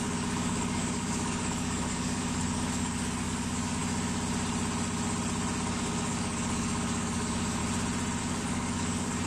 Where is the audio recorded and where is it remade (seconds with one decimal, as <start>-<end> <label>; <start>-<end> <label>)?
0.0-3.8 remade; 3.8-5.6 recorded; 5.6-7.6 remade; 7.6-8.2 recorded; 8.2-9.3 remade